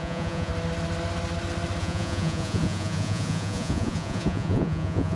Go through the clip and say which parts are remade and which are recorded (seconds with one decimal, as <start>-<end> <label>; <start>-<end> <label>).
0.0-0.5 remade; 0.5-1.8 recorded; 1.8-5.2 remade